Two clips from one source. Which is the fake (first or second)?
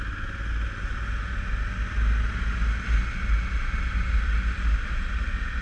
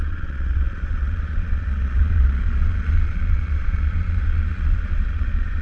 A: second